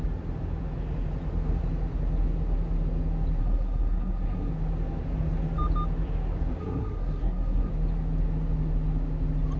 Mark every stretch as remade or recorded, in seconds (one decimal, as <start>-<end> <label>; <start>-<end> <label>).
0.0-3.4 recorded; 3.4-4.5 remade; 4.5-6.6 recorded; 6.6-7.7 remade; 7.7-9.6 recorded